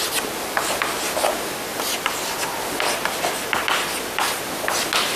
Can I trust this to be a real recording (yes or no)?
yes